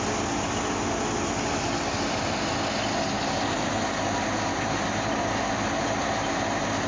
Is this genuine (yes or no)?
yes